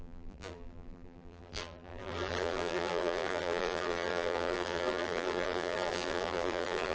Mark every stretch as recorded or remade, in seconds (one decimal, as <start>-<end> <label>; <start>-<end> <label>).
0.0-6.9 remade